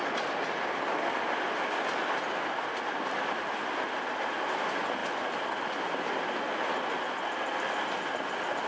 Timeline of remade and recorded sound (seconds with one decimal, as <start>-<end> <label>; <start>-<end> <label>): 0.0-8.7 recorded